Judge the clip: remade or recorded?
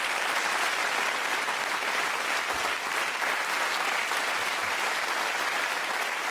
recorded